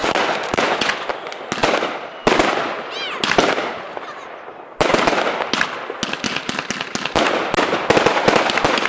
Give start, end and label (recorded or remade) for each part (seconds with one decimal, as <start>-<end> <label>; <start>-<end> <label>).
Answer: 0.0-1.1 remade; 1.1-8.9 recorded